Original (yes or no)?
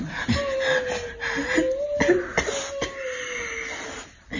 yes